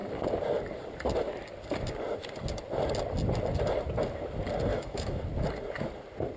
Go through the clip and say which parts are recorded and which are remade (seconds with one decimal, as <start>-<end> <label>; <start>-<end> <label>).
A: 0.0-4.7 recorded; 4.7-5.2 remade; 5.2-6.4 recorded